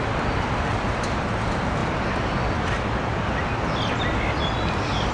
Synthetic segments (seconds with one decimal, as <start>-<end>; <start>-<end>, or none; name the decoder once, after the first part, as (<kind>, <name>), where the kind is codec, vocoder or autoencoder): none